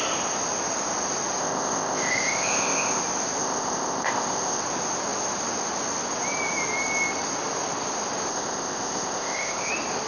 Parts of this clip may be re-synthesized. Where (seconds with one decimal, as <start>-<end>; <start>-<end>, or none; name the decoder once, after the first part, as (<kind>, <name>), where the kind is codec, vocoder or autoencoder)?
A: 1.4-3.0 (codec, ZipCodec); 3.4-4.6; 8.3-9.7